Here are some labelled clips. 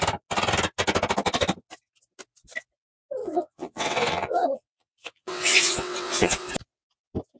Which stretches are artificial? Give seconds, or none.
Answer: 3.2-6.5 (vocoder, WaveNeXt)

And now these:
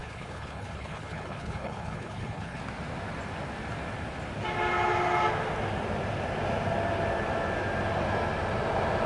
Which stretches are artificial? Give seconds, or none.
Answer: 0.0-2.6 (codec, HILCodec)

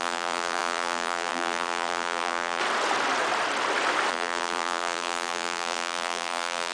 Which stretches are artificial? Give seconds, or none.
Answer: 0.0-2.6 (vocoder, BigVGAN v2); 4.1-6.7

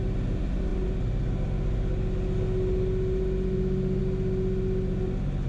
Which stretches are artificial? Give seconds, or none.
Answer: none

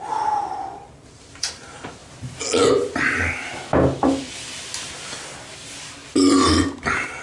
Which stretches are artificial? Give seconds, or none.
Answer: 0.0-2.0 (vocoder, BigVGAN v2); 2.7-3.5; 6.1-7.2

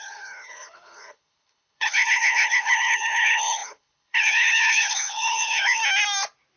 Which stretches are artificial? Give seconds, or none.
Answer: 0.0-5.8 (codec, HILCodec)

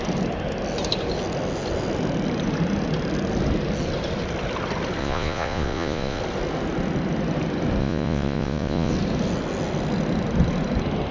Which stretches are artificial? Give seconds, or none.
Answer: 5.0-6.2 (vocoder, Vocos); 7.8-8.9

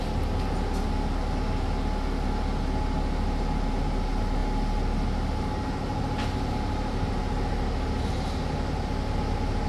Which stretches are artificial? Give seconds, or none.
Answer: none